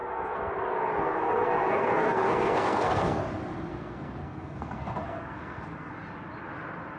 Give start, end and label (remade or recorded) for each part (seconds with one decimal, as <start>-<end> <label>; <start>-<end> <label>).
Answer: 0.0-0.5 remade; 0.5-1.0 recorded; 1.0-3.2 remade; 3.2-3.7 recorded; 3.7-5.9 remade; 5.9-7.0 recorded